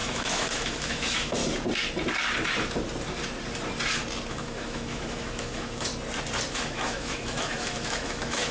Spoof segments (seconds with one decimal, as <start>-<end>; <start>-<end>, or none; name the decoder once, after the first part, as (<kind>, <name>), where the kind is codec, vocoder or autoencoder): 0.0-1.4 (autoencoder, DAC-VAE); 4.3-5.9; 6.5-8.5